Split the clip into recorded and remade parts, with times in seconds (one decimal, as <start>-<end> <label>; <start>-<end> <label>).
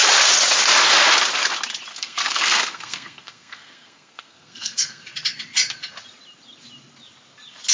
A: 0.0-1.9 recorded; 1.9-5.0 remade; 5.0-7.7 recorded